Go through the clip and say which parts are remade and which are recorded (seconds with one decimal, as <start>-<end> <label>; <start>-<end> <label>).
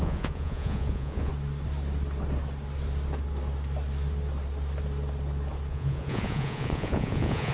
0.0-1.3 remade; 1.3-5.7 recorded; 5.7-7.5 remade